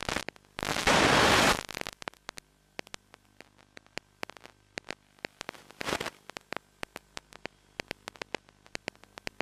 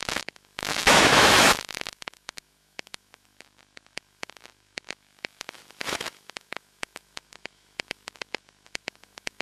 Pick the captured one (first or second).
first